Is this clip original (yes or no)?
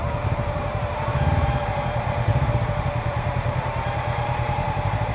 no